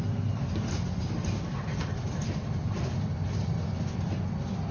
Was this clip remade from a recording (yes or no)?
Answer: no